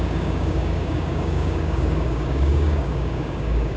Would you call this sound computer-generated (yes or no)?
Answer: yes